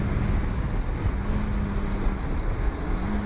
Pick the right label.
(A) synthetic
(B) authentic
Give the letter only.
B